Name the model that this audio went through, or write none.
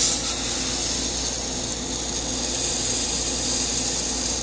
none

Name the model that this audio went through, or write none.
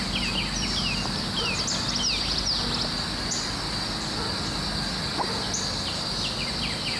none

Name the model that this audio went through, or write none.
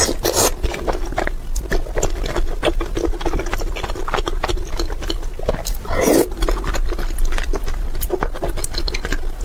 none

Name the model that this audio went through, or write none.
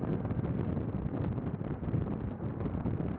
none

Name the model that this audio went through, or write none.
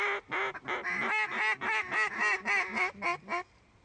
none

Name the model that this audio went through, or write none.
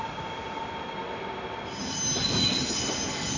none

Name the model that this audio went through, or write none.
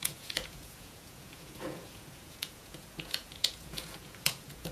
vocoder, Vocos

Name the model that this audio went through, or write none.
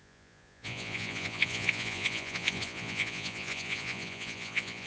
vocoder, Vocos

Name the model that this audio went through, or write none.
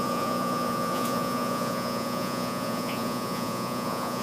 vocoder, Vocos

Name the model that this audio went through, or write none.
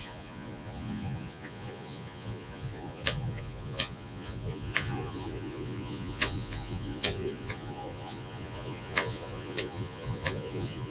vocoder, Vocos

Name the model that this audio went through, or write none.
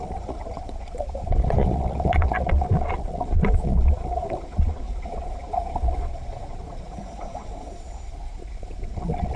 vocoder, Vocos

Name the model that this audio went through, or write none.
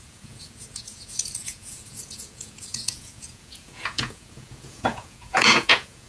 vocoder, Vocos